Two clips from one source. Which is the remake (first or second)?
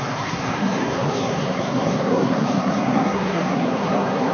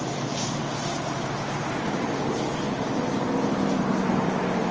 first